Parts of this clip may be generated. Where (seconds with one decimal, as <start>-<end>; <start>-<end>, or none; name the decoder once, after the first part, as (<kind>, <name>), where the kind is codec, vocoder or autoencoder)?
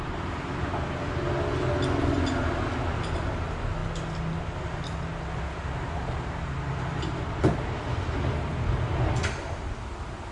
none